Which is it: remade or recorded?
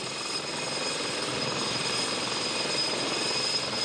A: recorded